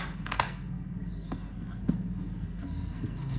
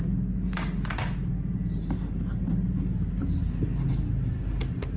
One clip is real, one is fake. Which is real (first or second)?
second